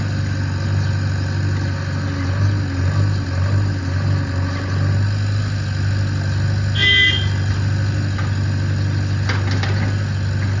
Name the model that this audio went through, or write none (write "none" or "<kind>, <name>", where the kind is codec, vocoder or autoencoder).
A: none